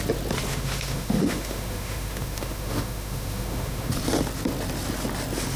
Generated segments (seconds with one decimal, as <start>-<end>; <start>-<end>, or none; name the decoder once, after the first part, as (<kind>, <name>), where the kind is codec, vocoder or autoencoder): 0.5-3.9 (autoencoder, DAC-VAE)